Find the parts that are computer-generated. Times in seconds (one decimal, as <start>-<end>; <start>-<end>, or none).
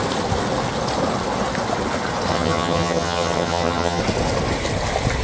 2.3-4.0